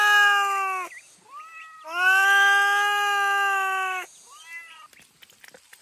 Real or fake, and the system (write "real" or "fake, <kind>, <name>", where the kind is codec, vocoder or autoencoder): real